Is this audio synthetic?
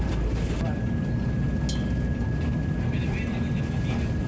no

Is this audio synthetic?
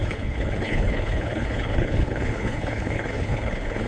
yes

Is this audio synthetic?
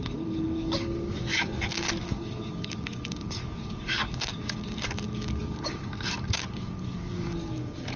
yes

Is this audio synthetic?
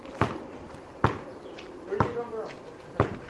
no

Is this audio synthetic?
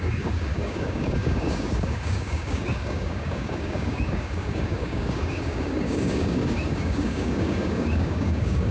yes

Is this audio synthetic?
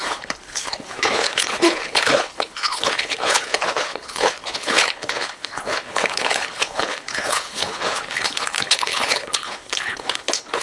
yes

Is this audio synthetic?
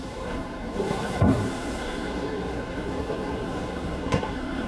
yes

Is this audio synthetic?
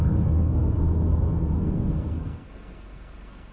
yes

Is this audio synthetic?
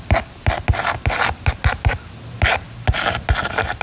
no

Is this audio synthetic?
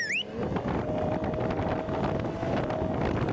no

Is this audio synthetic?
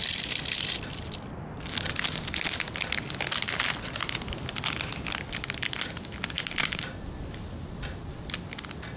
no